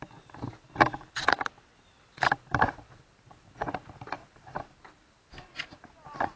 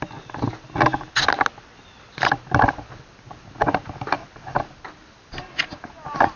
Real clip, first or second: second